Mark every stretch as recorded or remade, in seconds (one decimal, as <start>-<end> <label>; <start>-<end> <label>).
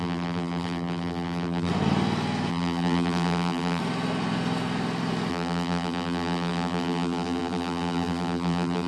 0.0-1.7 remade; 1.7-2.5 recorded; 2.5-3.8 remade; 3.8-5.3 recorded; 5.3-8.9 remade